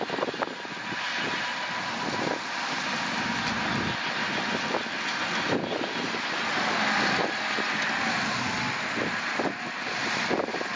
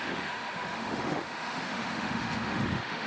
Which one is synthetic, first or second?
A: second